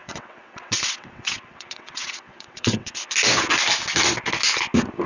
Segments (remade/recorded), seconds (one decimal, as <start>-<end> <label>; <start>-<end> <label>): 0.0-3.0 remade; 3.0-5.1 recorded